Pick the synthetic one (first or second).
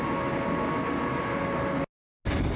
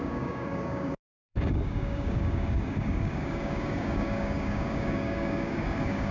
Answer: second